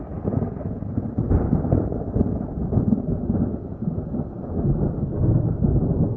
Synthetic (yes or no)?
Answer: no